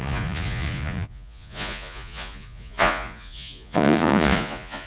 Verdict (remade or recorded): remade